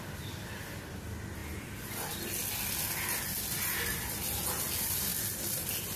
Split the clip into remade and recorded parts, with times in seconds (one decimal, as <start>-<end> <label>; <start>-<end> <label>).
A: 0.0-6.0 recorded